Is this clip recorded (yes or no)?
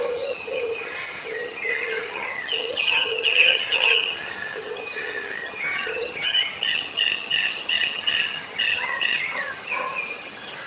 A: no